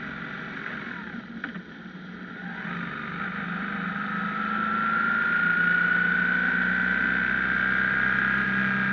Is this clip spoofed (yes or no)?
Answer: no